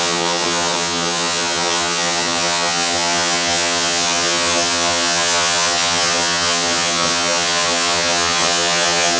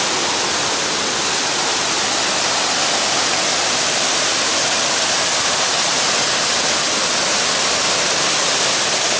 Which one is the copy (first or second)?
first